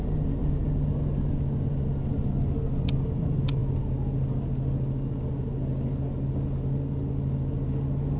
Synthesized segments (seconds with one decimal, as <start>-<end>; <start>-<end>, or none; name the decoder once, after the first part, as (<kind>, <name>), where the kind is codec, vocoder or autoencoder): none